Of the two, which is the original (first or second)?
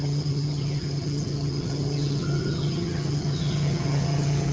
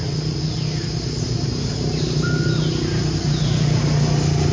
second